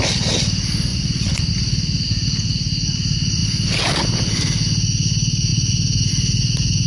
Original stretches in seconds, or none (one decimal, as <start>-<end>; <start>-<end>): 0.0-0.9; 1.5-6.9